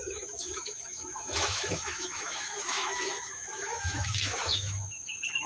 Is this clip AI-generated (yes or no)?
yes